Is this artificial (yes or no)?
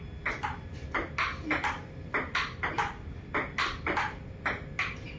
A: no